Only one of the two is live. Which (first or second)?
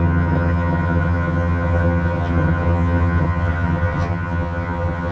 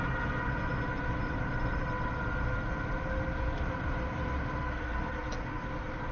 second